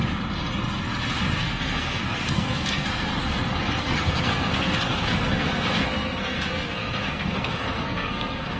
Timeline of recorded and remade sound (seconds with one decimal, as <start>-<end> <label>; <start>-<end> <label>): 0.0-1.4 recorded; 1.4-3.1 remade; 3.1-3.8 recorded; 3.8-8.6 remade